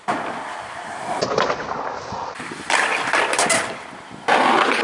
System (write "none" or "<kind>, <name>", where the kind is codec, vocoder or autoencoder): none